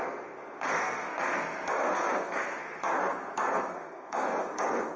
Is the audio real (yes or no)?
no